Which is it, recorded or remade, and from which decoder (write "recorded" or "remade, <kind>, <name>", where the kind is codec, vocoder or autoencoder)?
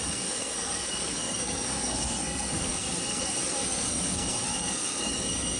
remade, codec, SNAC